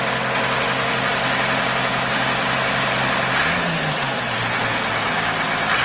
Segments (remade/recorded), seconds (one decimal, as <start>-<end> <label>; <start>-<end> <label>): 0.0-5.8 recorded